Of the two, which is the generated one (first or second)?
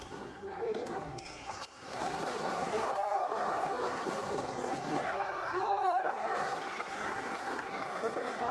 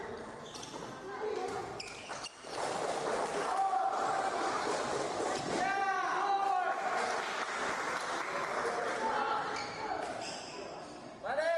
first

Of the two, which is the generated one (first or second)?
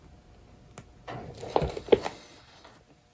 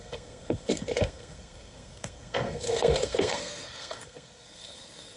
second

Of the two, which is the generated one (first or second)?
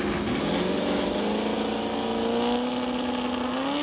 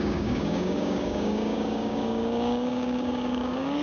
second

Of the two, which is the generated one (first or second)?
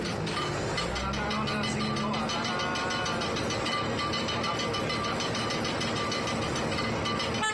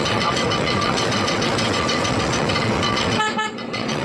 second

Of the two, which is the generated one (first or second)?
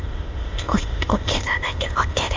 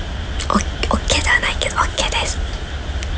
first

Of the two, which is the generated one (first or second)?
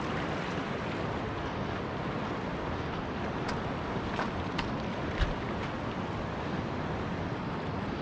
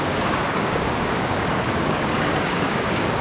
second